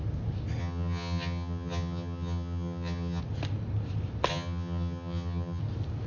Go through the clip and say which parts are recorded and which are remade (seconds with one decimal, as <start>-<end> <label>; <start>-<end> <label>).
0.0-0.6 recorded; 0.6-3.2 remade; 3.2-4.3 recorded; 4.3-5.6 remade; 5.6-6.1 recorded